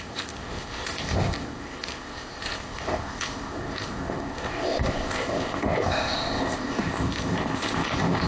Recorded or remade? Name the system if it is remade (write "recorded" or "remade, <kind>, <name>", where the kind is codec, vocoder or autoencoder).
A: remade, codec, ZipCodec